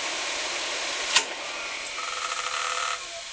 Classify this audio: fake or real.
fake